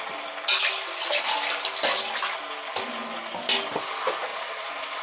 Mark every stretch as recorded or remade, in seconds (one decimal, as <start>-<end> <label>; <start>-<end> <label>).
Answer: 0.0-4.3 recorded; 4.3-5.0 remade